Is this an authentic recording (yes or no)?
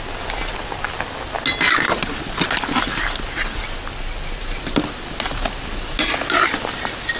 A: yes